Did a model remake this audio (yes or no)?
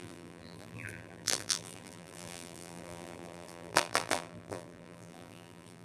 yes